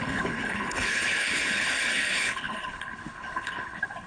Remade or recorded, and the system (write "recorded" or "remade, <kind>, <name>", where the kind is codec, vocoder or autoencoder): remade, codec, HILCodec